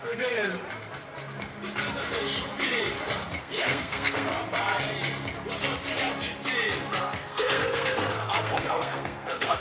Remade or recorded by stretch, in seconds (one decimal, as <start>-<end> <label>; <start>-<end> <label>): 0.0-0.5 remade; 0.5-3.4 recorded; 3.4-4.3 remade; 4.3-7.0 recorded; 7.0-9.6 remade